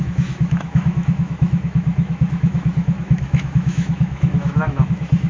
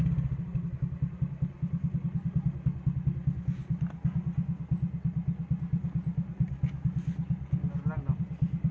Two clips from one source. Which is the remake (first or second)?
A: first